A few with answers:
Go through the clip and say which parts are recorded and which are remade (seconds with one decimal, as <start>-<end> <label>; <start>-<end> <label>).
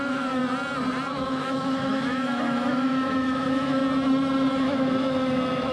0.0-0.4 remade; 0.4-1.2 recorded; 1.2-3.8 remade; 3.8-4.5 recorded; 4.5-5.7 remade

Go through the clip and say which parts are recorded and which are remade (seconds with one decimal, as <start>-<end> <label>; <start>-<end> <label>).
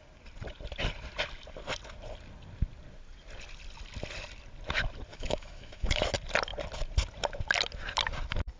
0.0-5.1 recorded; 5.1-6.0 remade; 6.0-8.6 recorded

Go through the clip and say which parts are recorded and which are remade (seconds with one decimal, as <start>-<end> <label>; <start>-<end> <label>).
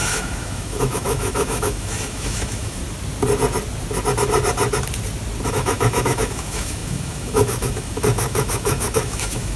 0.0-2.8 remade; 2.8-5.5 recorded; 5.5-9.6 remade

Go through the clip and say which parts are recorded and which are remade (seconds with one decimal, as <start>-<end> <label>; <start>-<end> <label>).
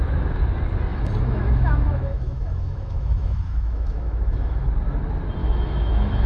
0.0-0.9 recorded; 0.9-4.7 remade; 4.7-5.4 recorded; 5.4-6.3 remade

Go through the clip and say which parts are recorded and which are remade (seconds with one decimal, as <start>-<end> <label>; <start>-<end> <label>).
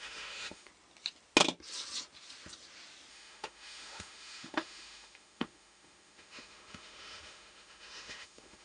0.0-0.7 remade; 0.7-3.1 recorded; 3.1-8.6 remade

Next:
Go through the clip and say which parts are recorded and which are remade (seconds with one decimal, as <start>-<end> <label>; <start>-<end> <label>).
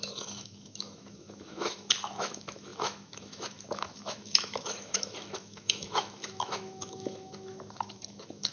0.0-8.5 remade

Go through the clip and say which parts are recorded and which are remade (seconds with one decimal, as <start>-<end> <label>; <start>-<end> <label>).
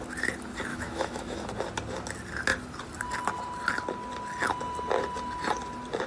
0.0-0.7 recorded; 0.7-1.5 remade; 1.5-6.1 recorded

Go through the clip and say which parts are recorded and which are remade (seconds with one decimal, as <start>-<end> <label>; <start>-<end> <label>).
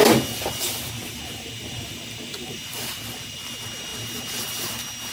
0.0-5.1 recorded